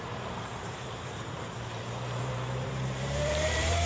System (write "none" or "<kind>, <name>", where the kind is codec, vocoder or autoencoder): vocoder, BigVGAN v2